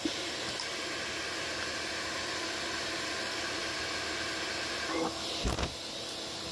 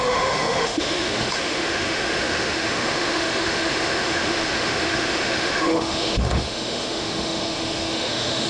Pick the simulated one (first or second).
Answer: second